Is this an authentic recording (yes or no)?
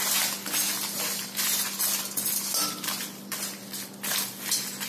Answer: yes